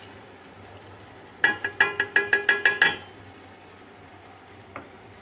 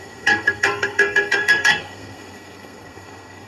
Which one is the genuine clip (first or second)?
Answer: first